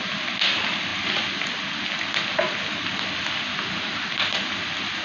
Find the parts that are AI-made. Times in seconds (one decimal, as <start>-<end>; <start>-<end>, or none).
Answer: none